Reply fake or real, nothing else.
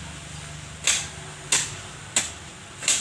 real